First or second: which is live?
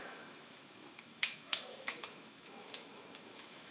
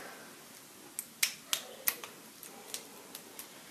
second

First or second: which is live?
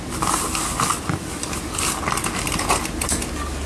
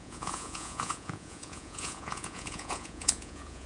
first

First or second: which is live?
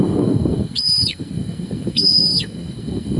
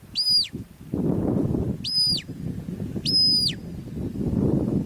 second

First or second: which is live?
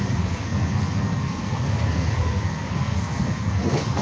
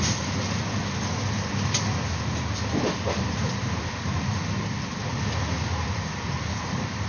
second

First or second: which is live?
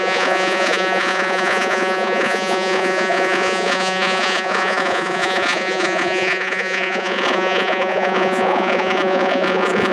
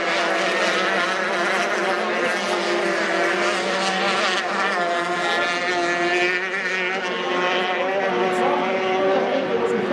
second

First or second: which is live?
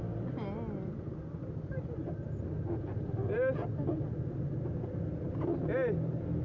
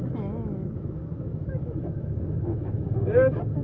first